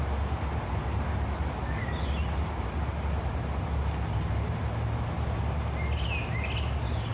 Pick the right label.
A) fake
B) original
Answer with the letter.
B